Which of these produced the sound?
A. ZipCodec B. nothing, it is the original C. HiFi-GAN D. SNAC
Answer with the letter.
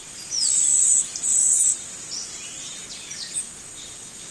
B